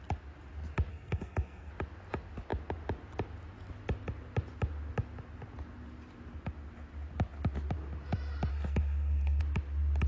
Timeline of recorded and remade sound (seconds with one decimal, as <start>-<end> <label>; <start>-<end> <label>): 0.0-0.9 recorded; 0.9-1.7 remade; 1.7-8.5 recorded; 8.5-9.4 remade; 9.4-10.1 recorded